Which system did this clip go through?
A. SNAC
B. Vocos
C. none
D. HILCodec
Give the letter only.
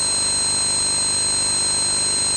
C